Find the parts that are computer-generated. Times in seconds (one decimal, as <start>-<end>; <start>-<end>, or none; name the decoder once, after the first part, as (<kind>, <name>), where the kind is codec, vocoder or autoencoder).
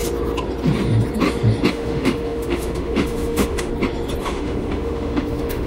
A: 1.7-3.7 (autoencoder, DAC-VAE); 4.2-5.7